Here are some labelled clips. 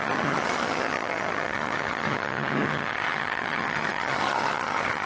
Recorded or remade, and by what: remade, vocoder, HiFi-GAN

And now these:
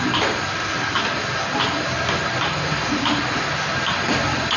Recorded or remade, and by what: recorded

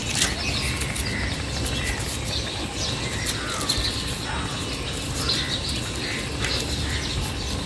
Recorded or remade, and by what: recorded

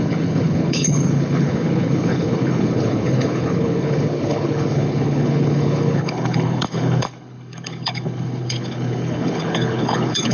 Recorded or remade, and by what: remade, codec, HILCodec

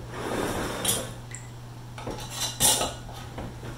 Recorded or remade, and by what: recorded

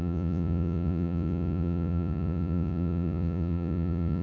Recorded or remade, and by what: remade, vocoder, Vocos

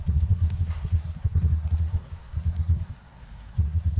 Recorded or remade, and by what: remade, codec, SNAC